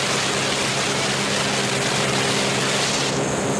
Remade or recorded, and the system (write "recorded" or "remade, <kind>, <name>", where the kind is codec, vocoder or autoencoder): recorded